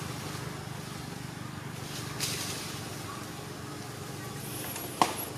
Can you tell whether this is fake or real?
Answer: real